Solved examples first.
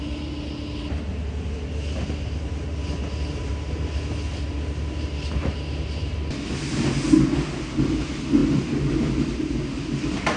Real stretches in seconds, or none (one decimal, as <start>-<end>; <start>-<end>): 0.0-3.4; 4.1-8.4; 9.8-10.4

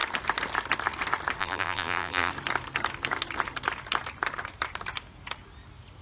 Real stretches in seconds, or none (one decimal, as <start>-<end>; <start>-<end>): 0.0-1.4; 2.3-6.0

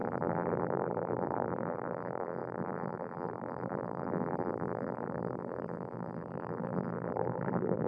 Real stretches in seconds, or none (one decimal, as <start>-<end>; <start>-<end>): none

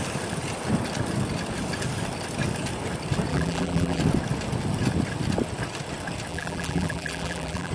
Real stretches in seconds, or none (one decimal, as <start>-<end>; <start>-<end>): 0.0-3.3; 4.0-6.3

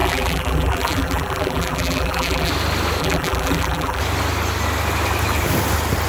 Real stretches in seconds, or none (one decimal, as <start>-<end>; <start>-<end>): 2.5-3.0; 4.0-6.1

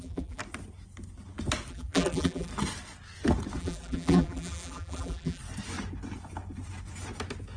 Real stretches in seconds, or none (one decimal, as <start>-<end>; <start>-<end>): 0.4-1.7; 2.5-3.6; 5.4-7.6

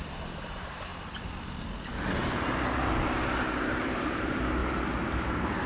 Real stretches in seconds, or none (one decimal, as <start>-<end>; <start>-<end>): 0.9-3.7; 4.6-5.2